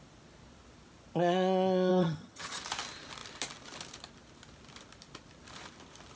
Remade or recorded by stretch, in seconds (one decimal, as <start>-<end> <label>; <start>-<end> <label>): 0.0-1.9 recorded; 1.9-2.6 remade; 2.6-6.2 recorded